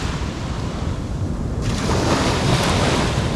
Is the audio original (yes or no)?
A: no